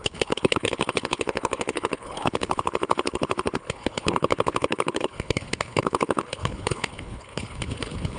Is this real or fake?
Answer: fake